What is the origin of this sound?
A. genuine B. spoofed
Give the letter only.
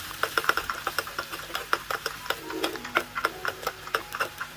B